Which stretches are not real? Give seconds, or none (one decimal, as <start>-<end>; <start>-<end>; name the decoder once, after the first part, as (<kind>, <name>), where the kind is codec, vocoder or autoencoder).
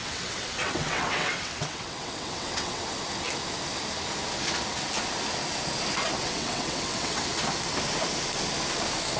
0.0-2.8 (vocoder, WaveNeXt); 6.2-7.2